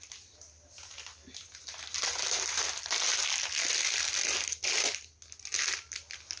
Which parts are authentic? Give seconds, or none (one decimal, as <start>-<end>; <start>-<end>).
0.0-6.4